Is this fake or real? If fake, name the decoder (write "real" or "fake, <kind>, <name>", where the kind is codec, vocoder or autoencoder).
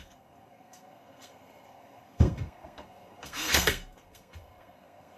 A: fake, codec, SNAC